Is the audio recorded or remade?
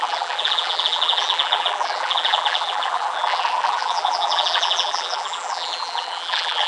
remade